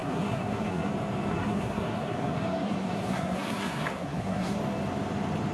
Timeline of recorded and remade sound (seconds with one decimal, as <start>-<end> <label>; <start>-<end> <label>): 0.0-0.9 remade; 0.9-1.3 recorded; 1.3-4.6 remade; 4.6-5.5 recorded